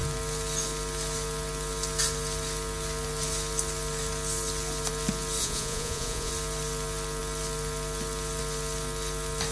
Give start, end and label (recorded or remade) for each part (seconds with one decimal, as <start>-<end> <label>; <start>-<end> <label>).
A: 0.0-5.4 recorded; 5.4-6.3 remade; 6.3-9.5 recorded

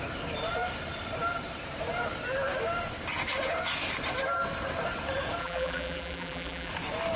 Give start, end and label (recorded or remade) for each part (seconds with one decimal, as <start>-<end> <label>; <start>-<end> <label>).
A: 0.0-5.4 recorded; 5.4-6.7 remade; 6.7-7.2 recorded

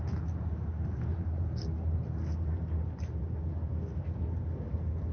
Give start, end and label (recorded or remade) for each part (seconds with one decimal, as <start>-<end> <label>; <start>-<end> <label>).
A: 0.0-5.1 recorded

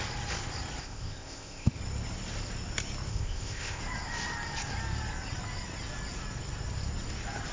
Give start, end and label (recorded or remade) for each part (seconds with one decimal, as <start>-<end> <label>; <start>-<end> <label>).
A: 0.0-0.8 recorded; 0.8-1.8 remade; 1.8-3.1 recorded; 3.1-3.8 remade; 3.8-7.5 recorded

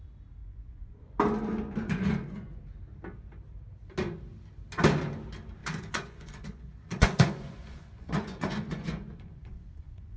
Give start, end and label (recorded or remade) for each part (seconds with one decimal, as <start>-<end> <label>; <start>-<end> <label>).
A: 0.0-0.4 recorded; 0.4-1.1 remade; 1.1-1.8 recorded; 1.8-2.6 remade; 2.6-5.6 recorded; 5.6-10.2 remade

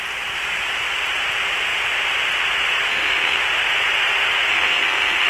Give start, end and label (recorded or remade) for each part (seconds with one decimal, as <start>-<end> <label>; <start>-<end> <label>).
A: 0.0-2.9 recorded; 2.9-3.4 remade; 3.4-4.5 recorded; 4.5-5.3 remade